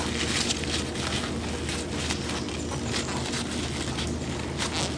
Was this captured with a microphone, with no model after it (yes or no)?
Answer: yes